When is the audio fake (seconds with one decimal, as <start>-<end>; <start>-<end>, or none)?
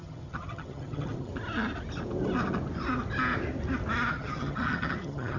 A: 0.0-1.3; 4.1-5.4